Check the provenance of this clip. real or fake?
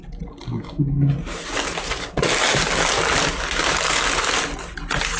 real